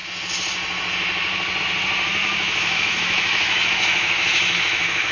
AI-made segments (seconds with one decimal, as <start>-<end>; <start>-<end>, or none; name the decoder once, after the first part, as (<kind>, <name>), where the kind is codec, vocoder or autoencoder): 2.2-5.1 (autoencoder, DAC-VAE)